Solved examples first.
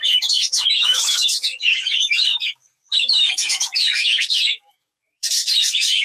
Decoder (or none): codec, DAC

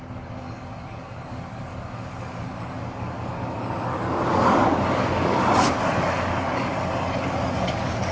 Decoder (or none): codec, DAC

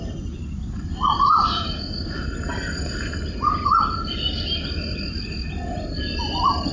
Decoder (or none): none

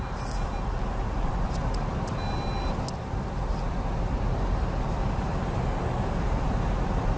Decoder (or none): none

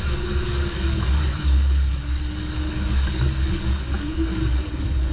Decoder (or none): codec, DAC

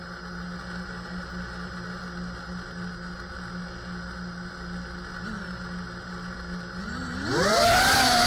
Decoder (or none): none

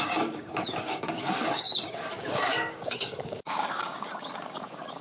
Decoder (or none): codec, DAC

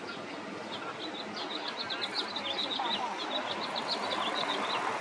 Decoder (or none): none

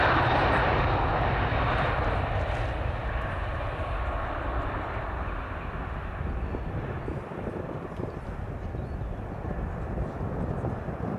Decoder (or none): none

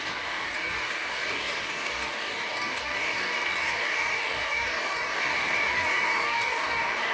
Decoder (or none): codec, DAC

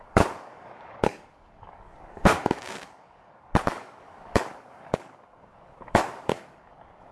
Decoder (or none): codec, DAC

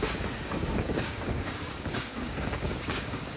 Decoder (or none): codec, DAC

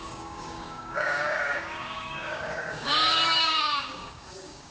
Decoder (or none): codec, DAC